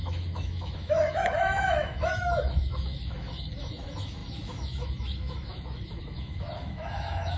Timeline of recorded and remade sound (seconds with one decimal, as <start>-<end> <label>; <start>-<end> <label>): 0.0-7.4 remade